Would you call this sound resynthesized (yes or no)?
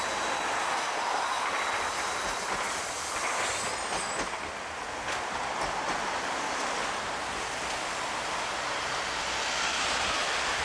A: no